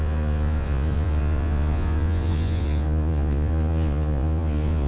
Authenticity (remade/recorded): remade